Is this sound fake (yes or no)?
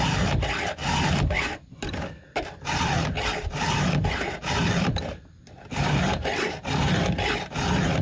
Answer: yes